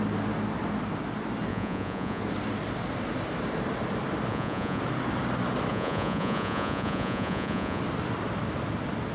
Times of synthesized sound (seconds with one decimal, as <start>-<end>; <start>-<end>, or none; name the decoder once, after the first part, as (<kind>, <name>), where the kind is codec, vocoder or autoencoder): 1.5-2.2 (vocoder, Vocos); 4.3-4.8; 5.7-7.8